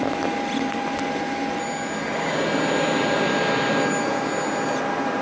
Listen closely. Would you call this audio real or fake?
real